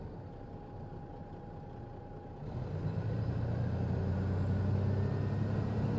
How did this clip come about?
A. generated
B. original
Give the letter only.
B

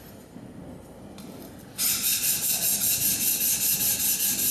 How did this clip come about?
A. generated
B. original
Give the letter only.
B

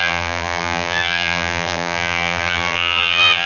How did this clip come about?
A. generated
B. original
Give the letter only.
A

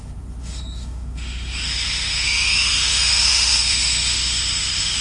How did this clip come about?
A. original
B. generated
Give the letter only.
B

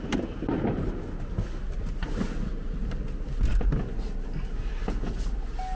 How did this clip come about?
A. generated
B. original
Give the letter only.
B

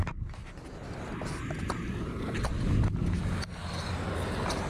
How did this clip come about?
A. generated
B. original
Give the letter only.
B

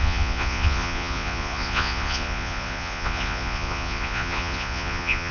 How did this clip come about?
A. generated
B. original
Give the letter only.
A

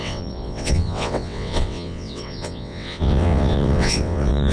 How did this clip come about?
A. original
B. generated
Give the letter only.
B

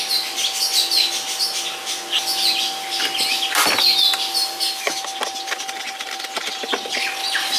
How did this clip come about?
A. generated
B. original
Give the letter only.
B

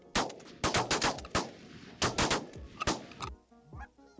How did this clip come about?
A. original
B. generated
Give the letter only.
A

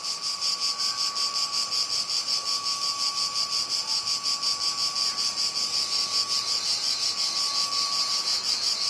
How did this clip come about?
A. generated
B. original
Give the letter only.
B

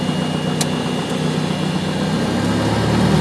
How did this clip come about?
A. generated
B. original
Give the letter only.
B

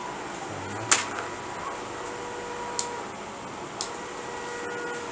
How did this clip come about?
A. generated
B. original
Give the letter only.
B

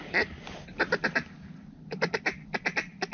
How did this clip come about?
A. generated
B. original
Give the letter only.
B